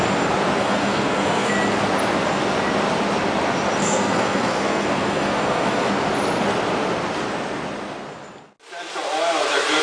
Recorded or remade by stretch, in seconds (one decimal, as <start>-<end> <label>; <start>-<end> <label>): 0.0-0.6 recorded; 0.6-1.5 remade; 1.5-3.8 recorded; 3.8-5.9 remade; 5.9-9.8 recorded